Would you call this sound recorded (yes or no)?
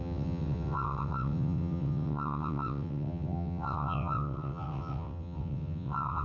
no